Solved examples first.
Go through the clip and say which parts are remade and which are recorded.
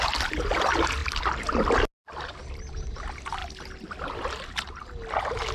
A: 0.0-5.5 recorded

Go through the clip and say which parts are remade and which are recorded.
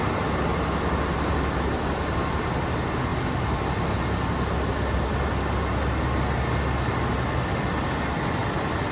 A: 0.0-8.9 recorded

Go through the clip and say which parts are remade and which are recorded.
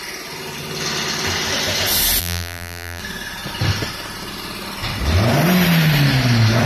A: 0.0-2.2 recorded; 2.2-3.0 remade; 3.0-6.7 recorded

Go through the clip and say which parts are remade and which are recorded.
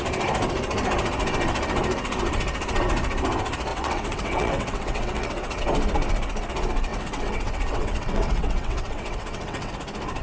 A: 0.0-3.7 recorded; 3.7-5.6 remade; 5.6-6.9 recorded; 6.9-9.7 remade; 9.7-10.2 recorded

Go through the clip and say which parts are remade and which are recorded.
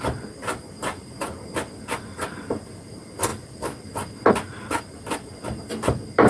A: 0.0-6.3 recorded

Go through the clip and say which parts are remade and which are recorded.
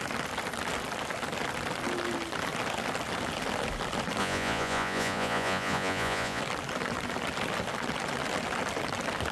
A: 0.0-4.2 recorded; 4.2-6.4 remade; 6.4-9.3 recorded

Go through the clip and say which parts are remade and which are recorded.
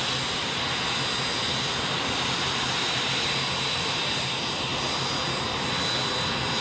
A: 0.0-6.6 recorded